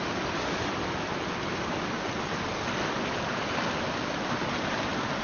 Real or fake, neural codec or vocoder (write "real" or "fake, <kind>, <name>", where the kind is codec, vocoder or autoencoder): real